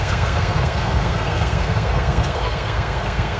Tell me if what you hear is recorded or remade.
remade